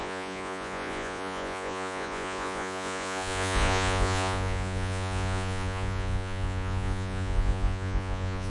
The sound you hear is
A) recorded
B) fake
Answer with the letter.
B